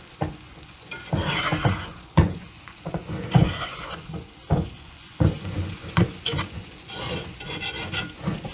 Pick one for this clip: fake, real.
fake